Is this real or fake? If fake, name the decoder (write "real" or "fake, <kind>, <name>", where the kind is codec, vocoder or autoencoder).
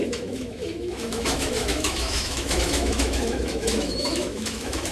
fake, autoencoder, DAC-VAE